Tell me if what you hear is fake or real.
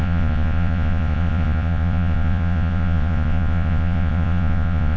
fake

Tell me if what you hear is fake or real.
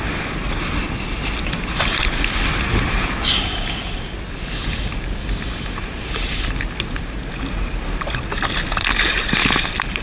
real